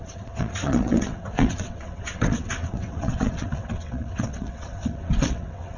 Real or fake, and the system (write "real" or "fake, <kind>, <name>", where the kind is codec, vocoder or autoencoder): fake, vocoder, WaveNeXt